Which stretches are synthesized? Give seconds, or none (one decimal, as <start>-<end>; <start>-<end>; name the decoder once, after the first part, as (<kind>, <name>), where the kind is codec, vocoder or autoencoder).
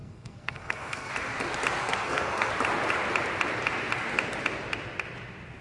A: 0.0-1.1 (codec, SNAC); 1.8-2.5